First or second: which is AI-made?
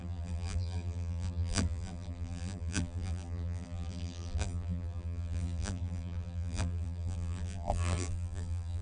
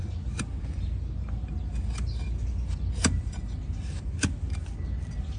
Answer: first